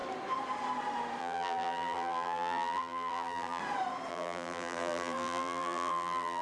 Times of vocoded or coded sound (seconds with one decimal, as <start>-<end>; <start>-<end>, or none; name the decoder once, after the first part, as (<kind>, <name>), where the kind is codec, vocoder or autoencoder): 1.2-3.6 (vocoder, BigVGAN v2); 4.1-6.4